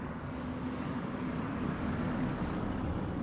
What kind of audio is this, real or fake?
fake